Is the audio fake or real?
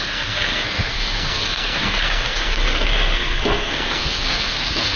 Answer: fake